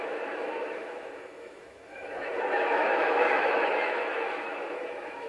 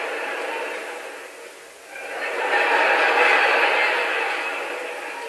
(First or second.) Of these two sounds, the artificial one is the first